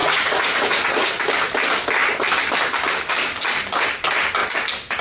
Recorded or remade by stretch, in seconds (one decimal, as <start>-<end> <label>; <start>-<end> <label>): 0.0-1.1 remade; 1.1-5.0 recorded